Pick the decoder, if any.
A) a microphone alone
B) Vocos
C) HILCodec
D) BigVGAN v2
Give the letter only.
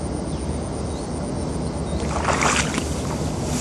A